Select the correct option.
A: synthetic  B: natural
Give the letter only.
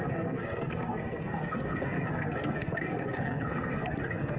A